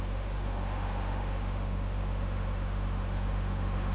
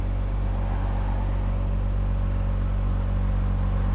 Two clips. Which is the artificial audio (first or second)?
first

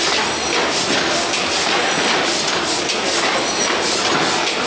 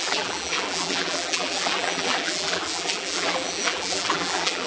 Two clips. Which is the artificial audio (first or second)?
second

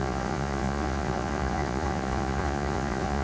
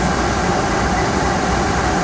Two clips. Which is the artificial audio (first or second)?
first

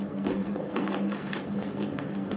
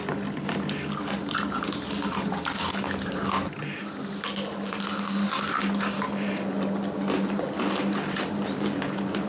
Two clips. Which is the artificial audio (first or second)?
first